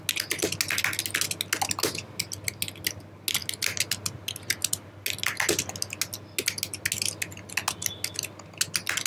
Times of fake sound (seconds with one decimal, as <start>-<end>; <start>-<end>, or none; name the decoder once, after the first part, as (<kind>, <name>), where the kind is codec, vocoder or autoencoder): none

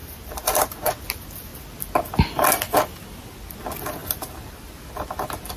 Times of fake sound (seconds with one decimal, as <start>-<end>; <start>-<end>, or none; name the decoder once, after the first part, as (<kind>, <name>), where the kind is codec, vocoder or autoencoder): 0.0-0.9 (vocoder, BigVGAN v2); 4.0-4.8

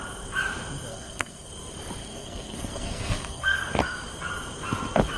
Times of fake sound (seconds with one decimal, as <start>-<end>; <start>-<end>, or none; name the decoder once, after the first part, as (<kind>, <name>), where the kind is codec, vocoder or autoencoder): 0.9-1.5 (codec, SNAC); 2.0-3.7